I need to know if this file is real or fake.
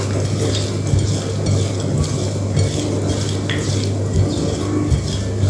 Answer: real